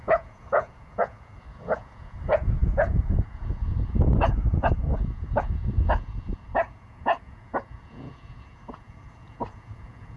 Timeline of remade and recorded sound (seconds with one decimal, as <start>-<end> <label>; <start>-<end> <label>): 0.0-10.2 remade